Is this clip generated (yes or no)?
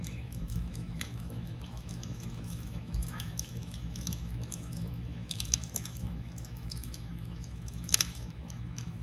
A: yes